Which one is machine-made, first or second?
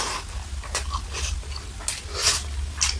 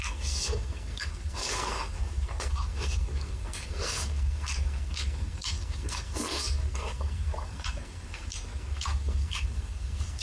second